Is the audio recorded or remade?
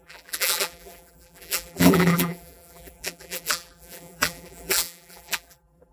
remade